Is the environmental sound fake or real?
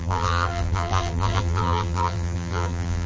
fake